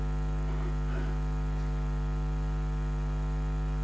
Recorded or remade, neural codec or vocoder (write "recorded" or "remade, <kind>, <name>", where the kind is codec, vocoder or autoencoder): recorded